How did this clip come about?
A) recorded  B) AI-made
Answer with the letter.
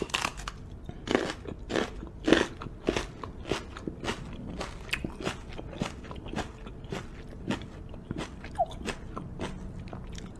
A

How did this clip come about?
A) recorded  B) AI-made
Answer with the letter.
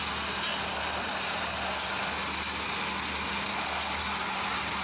A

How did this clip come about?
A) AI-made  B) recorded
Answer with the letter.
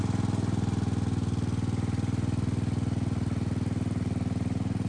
B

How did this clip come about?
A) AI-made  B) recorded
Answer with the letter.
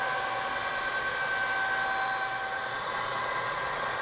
B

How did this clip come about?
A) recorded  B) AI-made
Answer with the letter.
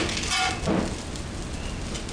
A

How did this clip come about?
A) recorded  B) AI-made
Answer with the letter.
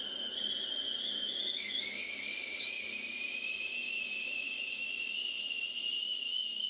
A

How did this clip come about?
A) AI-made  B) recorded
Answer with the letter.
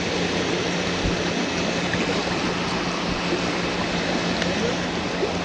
B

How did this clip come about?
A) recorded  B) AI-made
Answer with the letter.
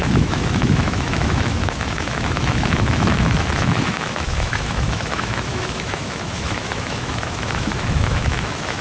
B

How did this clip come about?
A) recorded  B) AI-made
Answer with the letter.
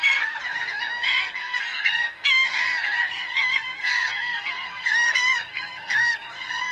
B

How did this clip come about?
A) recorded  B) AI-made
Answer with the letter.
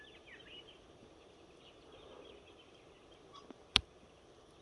A